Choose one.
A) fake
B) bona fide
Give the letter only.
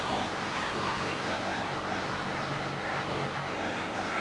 A